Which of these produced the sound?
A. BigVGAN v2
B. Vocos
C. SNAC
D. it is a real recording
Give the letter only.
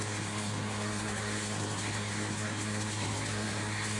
C